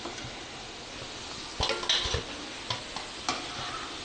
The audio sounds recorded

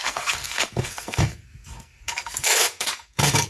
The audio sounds remade